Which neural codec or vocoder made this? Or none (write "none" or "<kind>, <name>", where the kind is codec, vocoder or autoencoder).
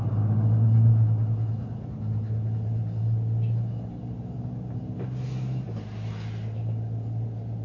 none